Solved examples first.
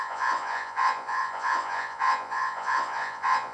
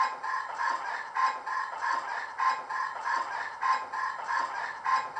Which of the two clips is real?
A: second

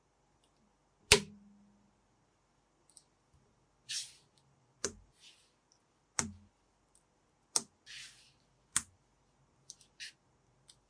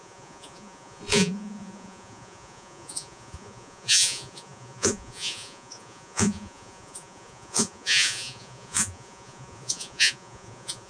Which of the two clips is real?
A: first